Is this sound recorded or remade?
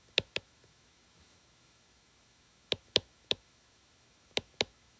remade